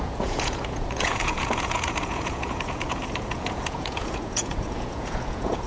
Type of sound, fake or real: fake